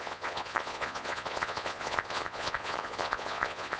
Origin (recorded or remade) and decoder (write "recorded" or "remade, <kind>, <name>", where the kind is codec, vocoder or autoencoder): remade, vocoder, Vocos